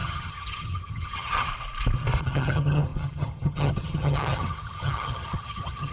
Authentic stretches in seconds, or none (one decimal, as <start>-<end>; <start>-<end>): 1.5-2.2